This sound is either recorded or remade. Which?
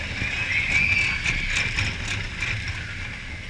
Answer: recorded